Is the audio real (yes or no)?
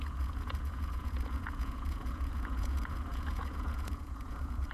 no